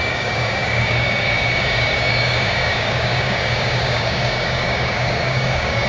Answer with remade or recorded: remade